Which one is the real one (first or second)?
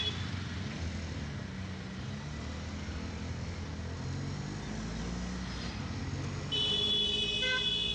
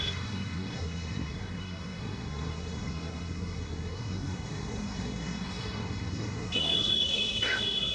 first